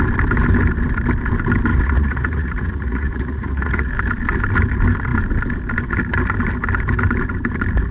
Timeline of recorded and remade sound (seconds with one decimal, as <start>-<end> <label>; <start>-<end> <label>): 0.0-1.7 recorded; 1.7-3.9 remade; 3.9-7.9 recorded